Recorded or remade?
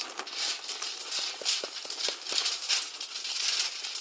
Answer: recorded